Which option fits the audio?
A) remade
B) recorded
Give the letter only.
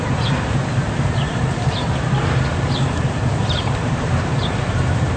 A